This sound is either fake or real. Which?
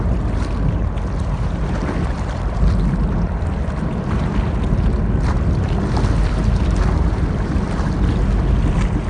real